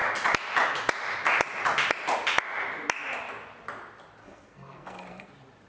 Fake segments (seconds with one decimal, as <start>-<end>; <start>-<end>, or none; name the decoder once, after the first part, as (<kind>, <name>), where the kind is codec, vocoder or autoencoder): 4.2-5.3 (codec, SNAC)